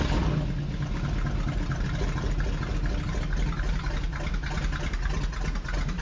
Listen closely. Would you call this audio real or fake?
real